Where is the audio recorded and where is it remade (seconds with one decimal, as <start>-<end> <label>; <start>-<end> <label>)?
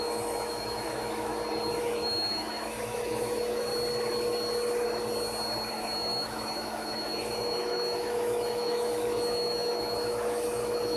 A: 0.0-1.3 remade; 1.3-1.8 recorded; 1.8-3.7 remade; 3.7-5.7 recorded; 5.7-11.0 remade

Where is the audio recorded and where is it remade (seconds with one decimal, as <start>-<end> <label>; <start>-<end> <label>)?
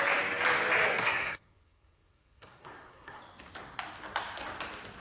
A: 0.0-0.9 recorded; 0.9-3.2 remade; 3.2-5.0 recorded